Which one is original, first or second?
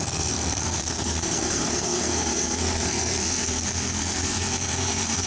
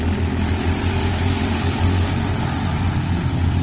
second